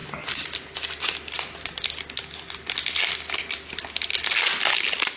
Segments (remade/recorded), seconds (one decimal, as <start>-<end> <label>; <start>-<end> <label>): 0.0-5.2 recorded